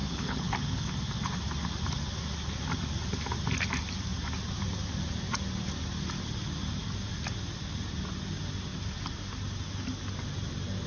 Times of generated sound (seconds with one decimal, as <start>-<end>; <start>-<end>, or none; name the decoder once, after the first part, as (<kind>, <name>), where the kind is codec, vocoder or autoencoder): 0.0-0.9 (codec, HILCodec)

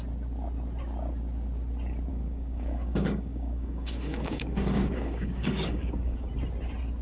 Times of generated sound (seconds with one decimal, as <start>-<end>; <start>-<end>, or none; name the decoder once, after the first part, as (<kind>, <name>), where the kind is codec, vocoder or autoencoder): 2.1-6.3 (codec, DAC)

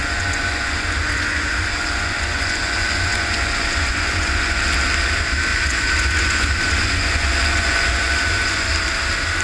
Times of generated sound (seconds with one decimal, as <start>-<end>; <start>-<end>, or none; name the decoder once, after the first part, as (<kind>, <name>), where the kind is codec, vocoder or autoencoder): 0.0-4.6 (vocoder, Vocos); 5.5-8.7

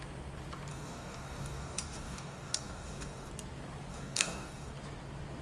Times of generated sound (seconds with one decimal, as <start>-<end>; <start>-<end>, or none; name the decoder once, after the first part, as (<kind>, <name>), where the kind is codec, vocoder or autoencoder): 0.7-3.3 (codec, DAC); 3.9-4.7